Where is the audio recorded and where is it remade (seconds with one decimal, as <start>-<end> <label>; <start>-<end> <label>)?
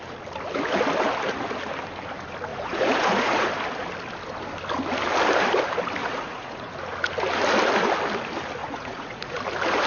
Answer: 0.0-2.5 recorded; 2.5-3.5 remade; 3.5-6.0 recorded; 6.0-6.7 remade; 6.7-8.6 recorded; 8.6-9.4 remade; 9.4-9.9 recorded